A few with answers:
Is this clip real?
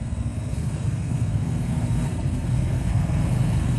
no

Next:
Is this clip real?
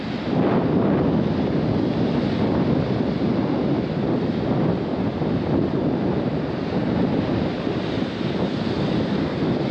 yes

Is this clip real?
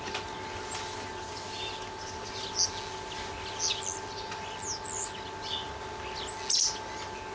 yes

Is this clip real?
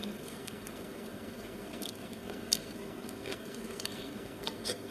no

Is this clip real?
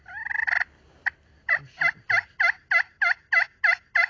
yes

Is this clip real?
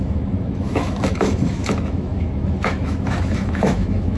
no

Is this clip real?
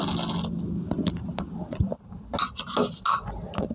yes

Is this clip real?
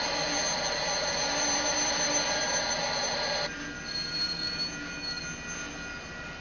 yes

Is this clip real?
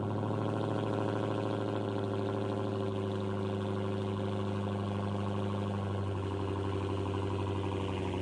yes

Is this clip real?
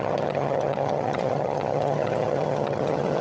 no